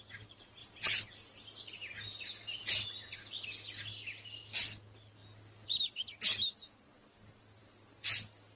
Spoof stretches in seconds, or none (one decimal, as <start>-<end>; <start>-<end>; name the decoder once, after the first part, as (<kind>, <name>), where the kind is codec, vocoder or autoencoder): 0.6-2.7 (vocoder, BigVGAN v2)